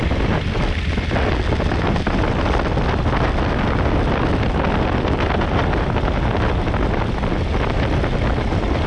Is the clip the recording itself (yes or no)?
yes